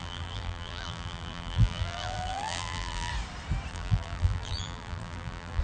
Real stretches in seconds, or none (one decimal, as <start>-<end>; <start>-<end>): 3.1-3.7